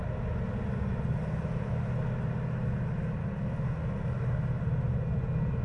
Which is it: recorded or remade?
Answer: recorded